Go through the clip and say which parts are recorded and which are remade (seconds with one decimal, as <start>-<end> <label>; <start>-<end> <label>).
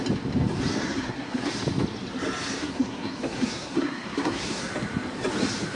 0.0-0.8 recorded; 0.8-1.4 remade; 1.4-2.6 recorded; 2.6-4.7 remade; 4.7-5.7 recorded